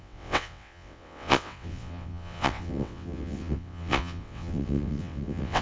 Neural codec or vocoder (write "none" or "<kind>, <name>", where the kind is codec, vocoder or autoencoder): vocoder, WaveNeXt